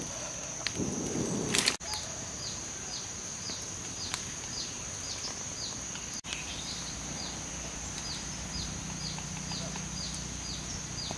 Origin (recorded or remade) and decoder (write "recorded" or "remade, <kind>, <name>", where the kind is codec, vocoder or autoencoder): recorded